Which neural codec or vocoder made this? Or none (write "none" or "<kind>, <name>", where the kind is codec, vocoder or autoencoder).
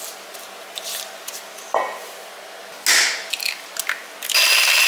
none